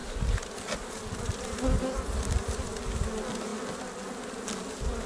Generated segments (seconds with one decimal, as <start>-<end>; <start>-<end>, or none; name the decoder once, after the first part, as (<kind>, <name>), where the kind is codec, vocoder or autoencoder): none